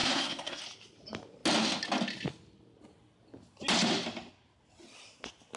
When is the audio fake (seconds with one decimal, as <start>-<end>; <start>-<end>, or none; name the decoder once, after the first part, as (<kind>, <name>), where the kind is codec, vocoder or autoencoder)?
0.0-0.6 (codec, SNAC)